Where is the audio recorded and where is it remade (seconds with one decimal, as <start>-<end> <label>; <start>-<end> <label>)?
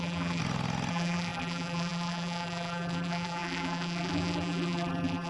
0.0-0.4 remade; 0.4-0.9 recorded; 0.9-5.3 remade